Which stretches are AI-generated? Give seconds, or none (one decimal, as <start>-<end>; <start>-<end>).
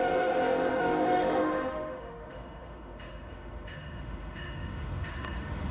0.0-5.7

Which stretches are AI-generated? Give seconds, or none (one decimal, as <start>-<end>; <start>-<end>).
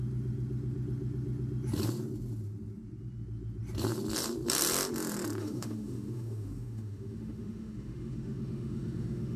5.4-9.4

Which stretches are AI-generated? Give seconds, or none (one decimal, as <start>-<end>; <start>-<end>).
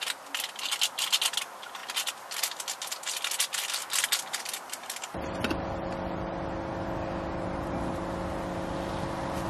none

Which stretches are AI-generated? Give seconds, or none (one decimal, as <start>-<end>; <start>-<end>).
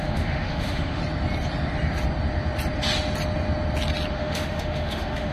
0.0-1.0; 4.1-5.3